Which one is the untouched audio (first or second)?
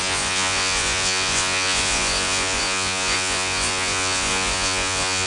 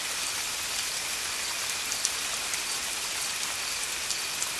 second